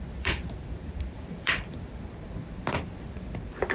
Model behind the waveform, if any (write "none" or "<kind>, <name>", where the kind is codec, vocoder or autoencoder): vocoder, BigVGAN v2